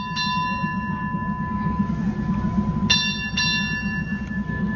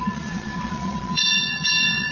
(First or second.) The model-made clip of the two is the second